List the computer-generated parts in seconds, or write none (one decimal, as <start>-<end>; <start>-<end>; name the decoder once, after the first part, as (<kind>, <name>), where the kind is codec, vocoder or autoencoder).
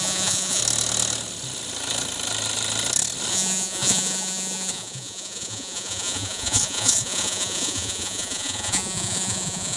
0.0-0.6 (vocoder, Vocos); 3.3-9.8